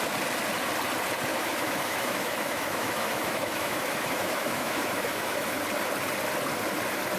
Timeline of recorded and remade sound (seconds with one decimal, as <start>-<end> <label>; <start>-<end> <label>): 0.0-1.3 recorded; 1.3-5.6 remade; 5.6-7.2 recorded